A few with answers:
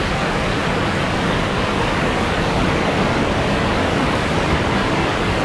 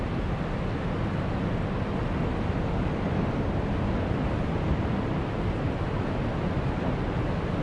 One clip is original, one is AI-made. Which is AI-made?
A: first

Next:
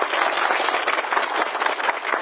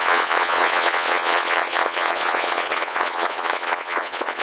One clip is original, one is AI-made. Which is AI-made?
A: second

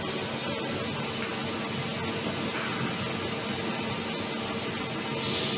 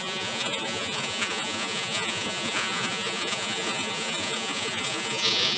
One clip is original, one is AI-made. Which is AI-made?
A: second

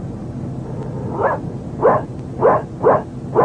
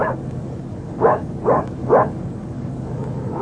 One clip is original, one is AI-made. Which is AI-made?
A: second